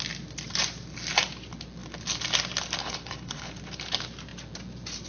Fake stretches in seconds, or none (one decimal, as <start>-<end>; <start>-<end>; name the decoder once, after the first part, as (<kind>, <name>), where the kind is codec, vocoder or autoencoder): 2.8-3.5 (codec, HILCodec)